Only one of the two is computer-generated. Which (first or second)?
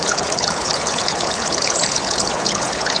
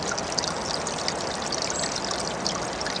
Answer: first